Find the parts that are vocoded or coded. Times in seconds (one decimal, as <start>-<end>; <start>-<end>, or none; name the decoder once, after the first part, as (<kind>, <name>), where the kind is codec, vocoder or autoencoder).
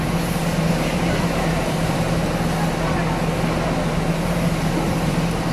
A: 0.0-2.2 (vocoder, BigVGAN v2); 3.8-5.5